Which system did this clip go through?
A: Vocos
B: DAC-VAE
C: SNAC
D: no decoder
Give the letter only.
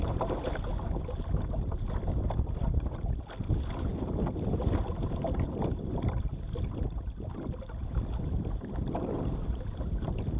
D